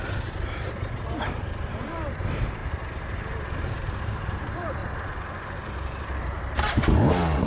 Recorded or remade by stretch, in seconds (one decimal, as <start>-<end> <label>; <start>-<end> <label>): 0.0-2.6 remade; 2.6-3.6 recorded; 3.6-4.8 remade; 4.8-6.2 recorded; 6.2-7.5 remade